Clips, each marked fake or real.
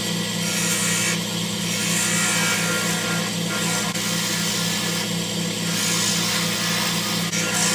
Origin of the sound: real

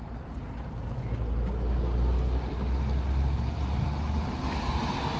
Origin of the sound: real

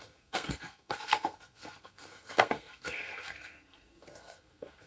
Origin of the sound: fake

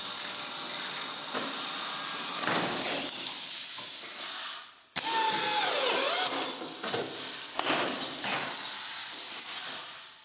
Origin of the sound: real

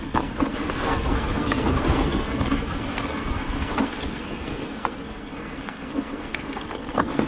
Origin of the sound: fake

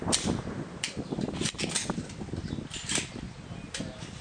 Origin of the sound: real